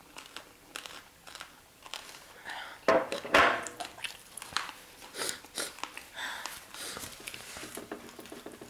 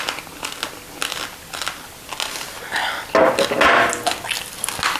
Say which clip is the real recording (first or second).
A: second